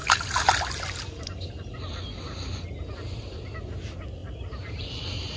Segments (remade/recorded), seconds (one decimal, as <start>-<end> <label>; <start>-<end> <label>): 0.0-5.4 recorded